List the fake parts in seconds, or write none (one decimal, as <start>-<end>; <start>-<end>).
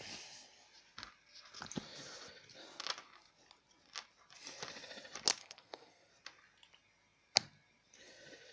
5.4-6.1